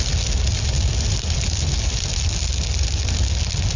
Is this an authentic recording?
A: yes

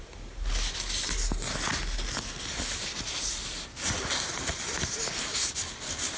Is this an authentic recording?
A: yes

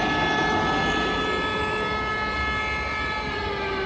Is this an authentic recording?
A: yes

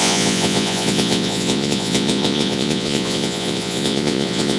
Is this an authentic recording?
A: no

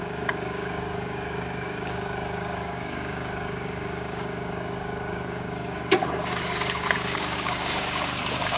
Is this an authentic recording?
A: no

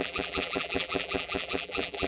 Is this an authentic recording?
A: no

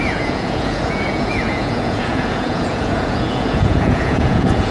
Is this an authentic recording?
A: no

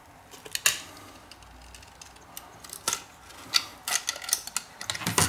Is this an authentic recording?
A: yes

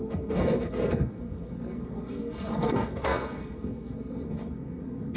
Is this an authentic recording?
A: no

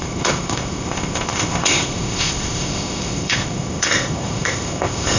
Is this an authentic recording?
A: no